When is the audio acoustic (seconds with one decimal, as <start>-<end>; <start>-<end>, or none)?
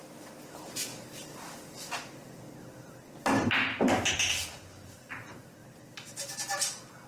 0.0-7.1